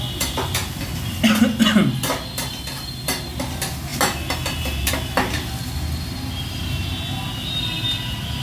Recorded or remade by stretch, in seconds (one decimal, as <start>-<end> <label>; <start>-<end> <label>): 0.0-8.4 recorded